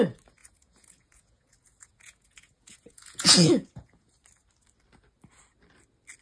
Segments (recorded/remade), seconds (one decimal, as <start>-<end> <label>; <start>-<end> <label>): 0.0-0.4 recorded; 0.4-4.1 remade; 4.1-6.2 recorded